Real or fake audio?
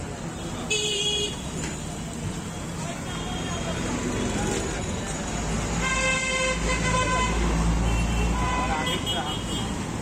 real